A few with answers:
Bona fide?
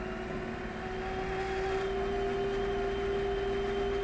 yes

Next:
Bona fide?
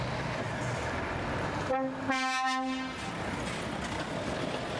yes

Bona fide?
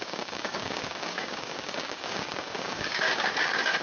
no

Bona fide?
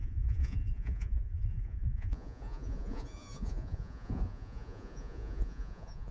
no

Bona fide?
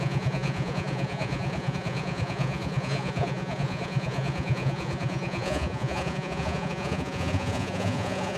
no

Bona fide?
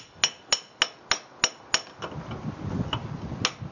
yes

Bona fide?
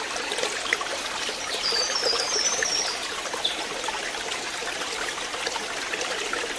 yes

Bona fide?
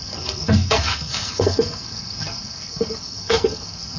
no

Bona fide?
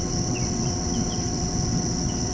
no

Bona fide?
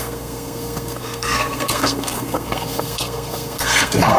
no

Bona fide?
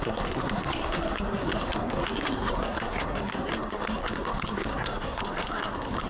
no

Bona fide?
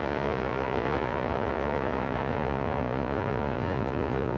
no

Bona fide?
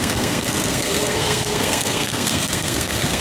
no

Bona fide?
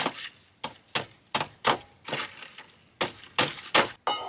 yes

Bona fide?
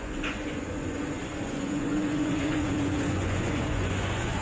no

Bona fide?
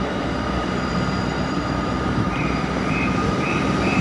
no